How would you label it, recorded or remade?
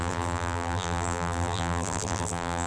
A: remade